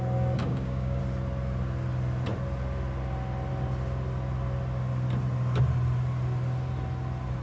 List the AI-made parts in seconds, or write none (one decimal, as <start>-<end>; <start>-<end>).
0.4-1.0